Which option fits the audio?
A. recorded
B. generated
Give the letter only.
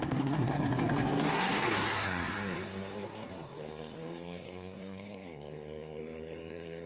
B